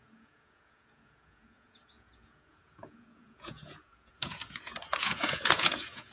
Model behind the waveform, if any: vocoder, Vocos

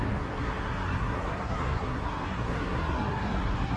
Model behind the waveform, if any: codec, SNAC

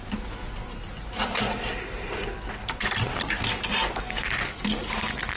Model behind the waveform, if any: none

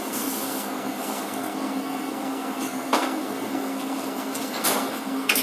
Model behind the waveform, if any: codec, SNAC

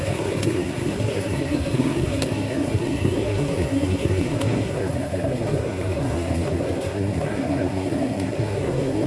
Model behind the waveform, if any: codec, SNAC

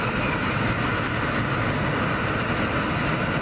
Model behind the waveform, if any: none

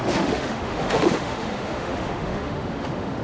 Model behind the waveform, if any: autoencoder, DAC-VAE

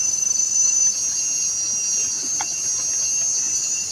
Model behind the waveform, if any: none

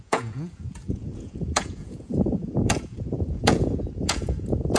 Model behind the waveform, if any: vocoder, Vocos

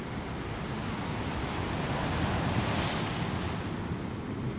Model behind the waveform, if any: none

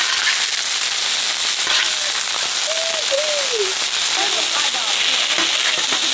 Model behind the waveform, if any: none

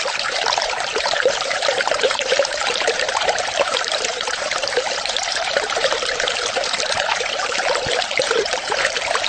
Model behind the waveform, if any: vocoder, BigVGAN v2